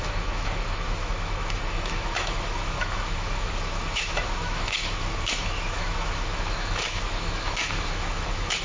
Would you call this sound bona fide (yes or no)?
no